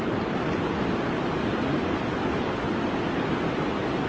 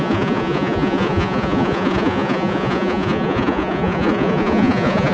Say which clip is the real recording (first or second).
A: first